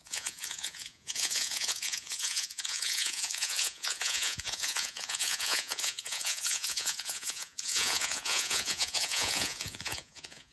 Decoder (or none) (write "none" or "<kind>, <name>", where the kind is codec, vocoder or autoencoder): vocoder, Vocos